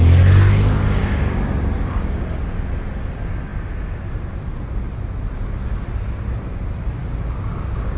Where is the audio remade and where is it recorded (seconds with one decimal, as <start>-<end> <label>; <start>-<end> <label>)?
0.0-1.0 recorded; 1.0-2.5 remade; 2.5-7.0 recorded; 7.0-8.0 remade